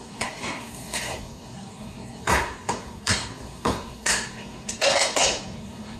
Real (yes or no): no